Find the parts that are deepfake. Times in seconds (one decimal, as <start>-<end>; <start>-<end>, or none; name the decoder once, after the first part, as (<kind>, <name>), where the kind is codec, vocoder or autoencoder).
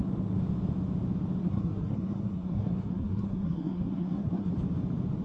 1.4-4.5 (codec, SNAC)